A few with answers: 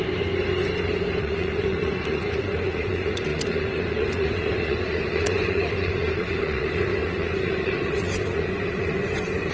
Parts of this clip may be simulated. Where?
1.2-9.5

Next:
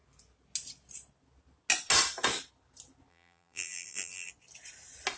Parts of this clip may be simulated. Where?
3.1-4.3